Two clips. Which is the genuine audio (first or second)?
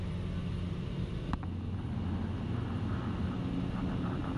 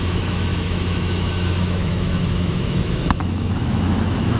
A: first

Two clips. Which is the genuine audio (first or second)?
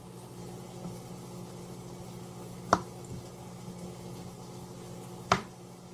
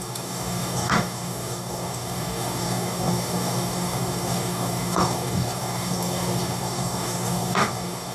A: first